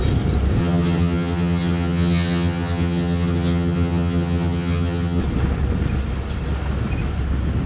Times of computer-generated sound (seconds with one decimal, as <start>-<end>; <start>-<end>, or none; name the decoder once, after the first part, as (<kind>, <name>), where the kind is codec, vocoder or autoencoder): 0.6-5.2 (vocoder, HiFi-GAN)